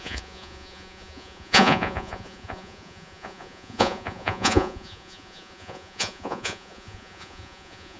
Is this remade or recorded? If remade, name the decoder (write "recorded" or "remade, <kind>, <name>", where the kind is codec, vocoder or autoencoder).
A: remade, vocoder, Vocos